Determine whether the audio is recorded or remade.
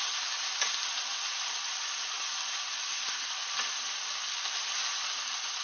recorded